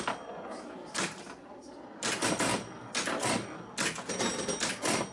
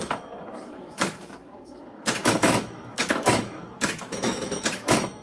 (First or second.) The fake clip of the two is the second